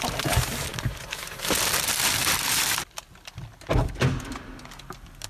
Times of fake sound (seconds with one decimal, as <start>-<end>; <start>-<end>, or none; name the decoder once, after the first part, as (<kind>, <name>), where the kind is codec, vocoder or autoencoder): 0.0-5.3 (vocoder, BigVGAN v2)